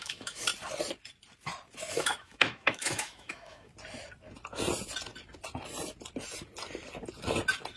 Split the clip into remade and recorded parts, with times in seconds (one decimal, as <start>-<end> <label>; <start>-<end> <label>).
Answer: 0.0-0.5 remade; 0.5-1.9 recorded; 1.9-3.7 remade; 3.7-7.8 recorded